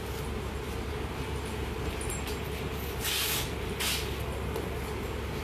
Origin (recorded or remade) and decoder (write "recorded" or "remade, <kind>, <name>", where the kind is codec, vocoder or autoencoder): recorded